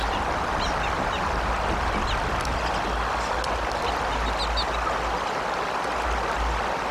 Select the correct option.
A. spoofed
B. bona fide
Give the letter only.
B